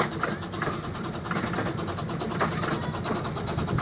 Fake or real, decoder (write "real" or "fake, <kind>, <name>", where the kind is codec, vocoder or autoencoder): real